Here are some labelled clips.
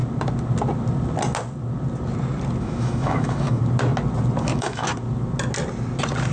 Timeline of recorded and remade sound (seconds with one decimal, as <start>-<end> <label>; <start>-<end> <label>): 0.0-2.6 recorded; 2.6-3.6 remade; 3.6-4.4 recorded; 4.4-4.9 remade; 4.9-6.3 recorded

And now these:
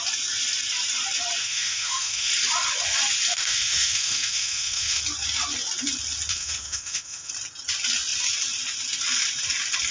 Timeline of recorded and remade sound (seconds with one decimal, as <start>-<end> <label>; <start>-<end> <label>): 0.0-1.4 recorded; 1.4-2.3 remade; 2.3-3.3 recorded; 3.3-5.0 remade; 5.0-6.3 recorded; 6.3-7.3 remade; 7.3-9.9 recorded

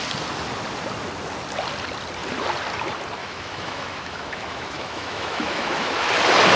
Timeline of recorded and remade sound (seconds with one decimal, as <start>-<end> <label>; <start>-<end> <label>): 0.0-3.2 recorded; 3.2-6.1 remade; 6.1-6.6 recorded

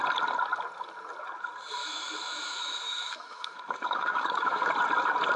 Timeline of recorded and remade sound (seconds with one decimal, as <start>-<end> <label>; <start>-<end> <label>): 0.0-1.8 recorded; 1.8-4.7 remade; 4.7-5.4 recorded

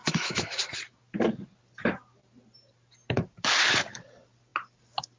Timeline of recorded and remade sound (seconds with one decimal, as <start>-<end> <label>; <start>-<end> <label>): 0.0-0.6 remade; 0.6-5.2 recorded

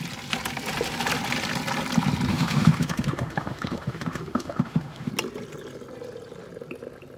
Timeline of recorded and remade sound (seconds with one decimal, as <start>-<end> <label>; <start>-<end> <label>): 0.0-2.3 recorded; 2.3-5.1 remade; 5.1-7.2 recorded